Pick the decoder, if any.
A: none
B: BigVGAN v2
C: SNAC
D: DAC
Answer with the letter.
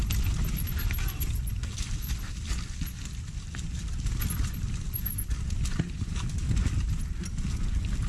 A